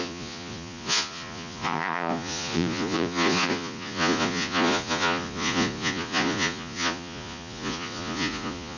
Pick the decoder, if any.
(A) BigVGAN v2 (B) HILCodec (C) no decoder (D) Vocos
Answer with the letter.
D